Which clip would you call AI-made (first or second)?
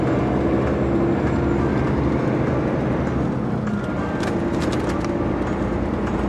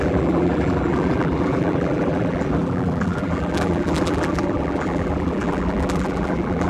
second